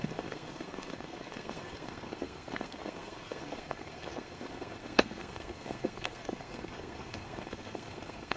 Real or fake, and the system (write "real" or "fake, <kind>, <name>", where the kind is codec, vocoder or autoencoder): fake, codec, SNAC